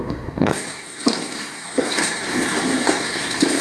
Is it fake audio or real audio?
fake